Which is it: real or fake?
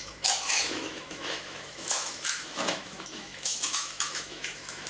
fake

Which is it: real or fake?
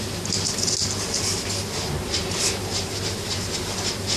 real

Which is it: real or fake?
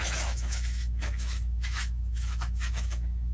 fake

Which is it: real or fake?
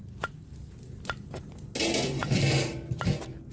real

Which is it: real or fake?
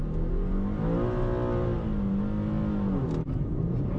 real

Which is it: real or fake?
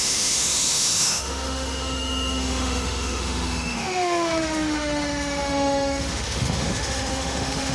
fake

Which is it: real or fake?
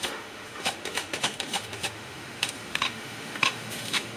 fake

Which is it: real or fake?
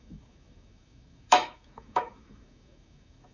fake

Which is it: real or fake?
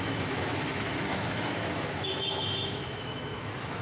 fake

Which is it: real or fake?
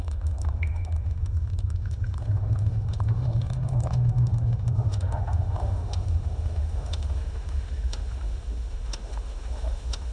fake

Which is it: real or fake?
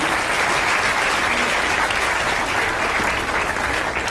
real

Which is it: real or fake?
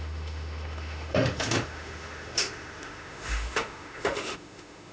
fake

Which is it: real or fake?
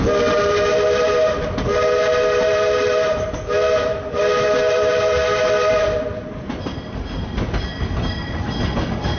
real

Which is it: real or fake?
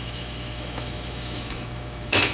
fake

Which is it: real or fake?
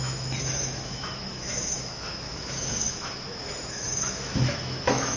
fake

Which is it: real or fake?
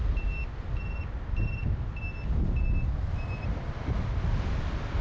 real